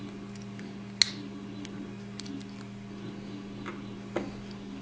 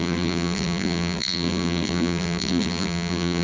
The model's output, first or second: second